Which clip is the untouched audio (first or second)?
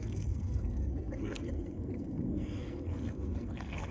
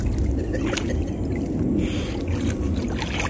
second